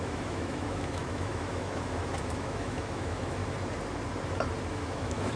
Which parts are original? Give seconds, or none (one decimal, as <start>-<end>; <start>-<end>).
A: 3.4-4.7